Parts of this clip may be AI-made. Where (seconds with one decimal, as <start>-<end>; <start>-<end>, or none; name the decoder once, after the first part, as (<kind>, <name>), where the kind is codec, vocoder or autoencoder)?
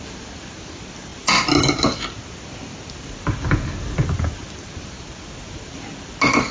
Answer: none